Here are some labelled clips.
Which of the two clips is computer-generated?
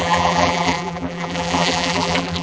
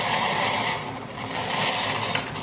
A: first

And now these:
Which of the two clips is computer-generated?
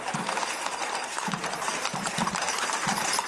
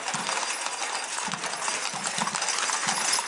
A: first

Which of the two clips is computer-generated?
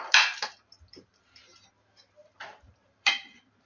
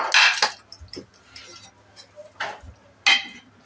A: first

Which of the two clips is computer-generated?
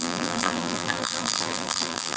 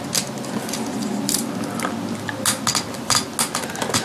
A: first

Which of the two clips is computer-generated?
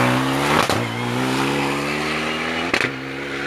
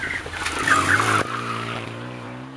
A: second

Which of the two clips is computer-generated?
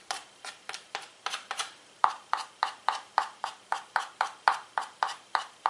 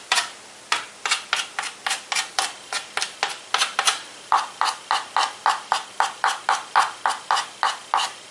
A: first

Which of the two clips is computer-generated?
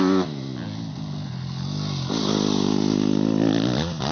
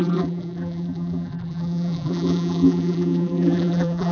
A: second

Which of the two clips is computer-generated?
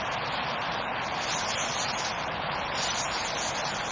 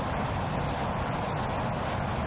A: first